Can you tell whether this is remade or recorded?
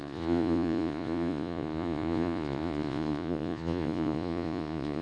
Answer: remade